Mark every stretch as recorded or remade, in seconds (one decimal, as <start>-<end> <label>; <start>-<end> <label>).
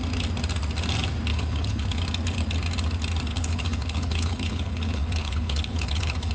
0.0-1.3 recorded; 1.3-2.0 remade; 2.0-3.3 recorded; 3.3-6.3 remade